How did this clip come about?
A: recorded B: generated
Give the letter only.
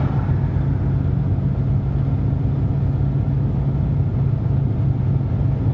A